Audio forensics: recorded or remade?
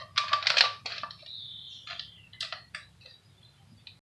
recorded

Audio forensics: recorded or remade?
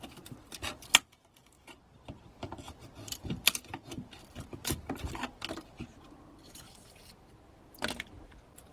remade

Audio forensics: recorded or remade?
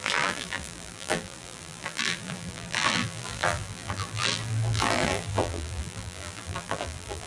remade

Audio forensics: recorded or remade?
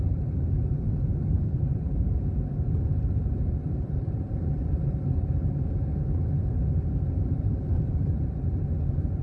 remade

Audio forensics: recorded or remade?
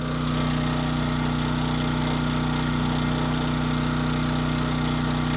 recorded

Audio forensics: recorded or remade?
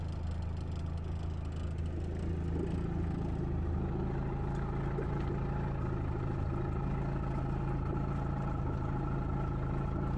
recorded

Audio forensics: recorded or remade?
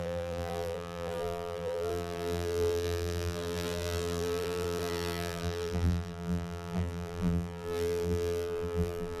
remade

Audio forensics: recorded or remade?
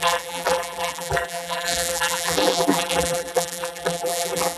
remade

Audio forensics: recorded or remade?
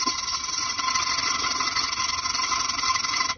recorded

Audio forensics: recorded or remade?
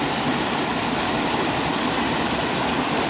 recorded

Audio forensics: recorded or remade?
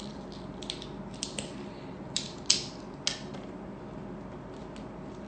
recorded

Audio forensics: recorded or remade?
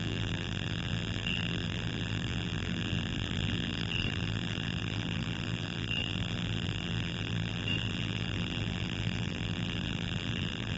remade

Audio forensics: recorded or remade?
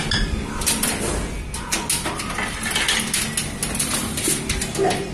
recorded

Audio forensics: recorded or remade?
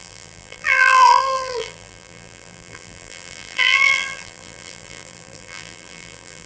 remade